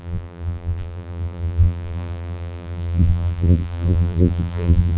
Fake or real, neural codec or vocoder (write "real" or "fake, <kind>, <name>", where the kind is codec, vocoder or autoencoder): fake, vocoder, BigVGAN v2